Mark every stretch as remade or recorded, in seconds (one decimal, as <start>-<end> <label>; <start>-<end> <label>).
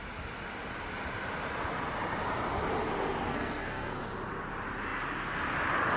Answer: 0.0-3.3 recorded; 3.3-4.0 remade; 4.0-6.0 recorded